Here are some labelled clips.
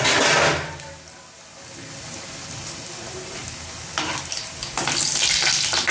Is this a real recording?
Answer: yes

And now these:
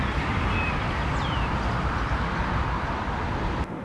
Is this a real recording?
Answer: yes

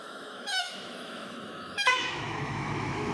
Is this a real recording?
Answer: no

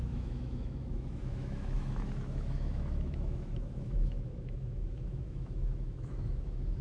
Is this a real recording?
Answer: no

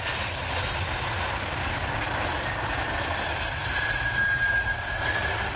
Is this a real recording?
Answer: yes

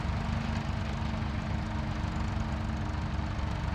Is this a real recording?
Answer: yes